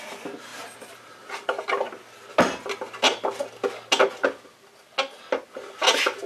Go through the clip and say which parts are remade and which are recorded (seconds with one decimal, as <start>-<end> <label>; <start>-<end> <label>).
0.0-6.3 recorded